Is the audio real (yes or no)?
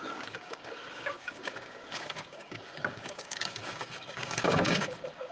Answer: no